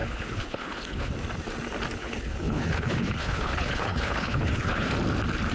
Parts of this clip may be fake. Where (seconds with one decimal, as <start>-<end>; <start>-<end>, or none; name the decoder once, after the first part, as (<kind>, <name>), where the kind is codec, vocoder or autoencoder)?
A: 0.0-1.1 (codec, HILCodec); 2.0-4.9